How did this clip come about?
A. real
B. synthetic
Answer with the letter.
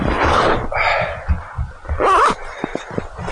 A